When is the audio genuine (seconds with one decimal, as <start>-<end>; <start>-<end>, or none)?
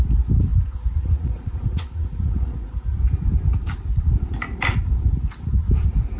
0.0-0.5; 3.0-6.2